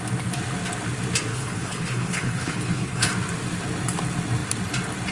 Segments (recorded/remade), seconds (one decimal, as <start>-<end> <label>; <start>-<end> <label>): 0.0-1.3 recorded; 1.3-3.1 remade; 3.1-5.1 recorded